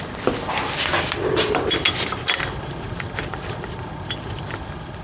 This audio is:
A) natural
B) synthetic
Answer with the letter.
A